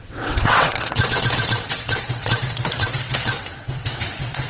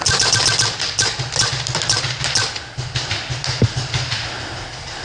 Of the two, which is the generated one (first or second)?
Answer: first